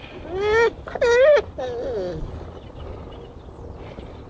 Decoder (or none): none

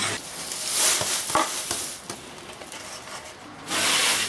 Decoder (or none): none